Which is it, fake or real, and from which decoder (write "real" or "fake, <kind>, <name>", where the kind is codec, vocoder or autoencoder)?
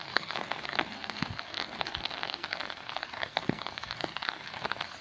fake, codec, SNAC